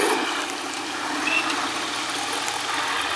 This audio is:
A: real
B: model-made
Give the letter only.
A